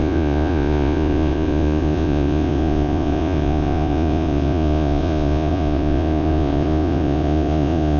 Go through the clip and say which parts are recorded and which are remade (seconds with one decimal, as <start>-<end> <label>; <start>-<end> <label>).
0.0-8.0 remade